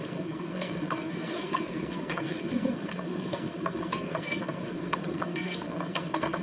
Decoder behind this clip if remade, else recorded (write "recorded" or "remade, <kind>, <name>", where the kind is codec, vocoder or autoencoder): remade, codec, SNAC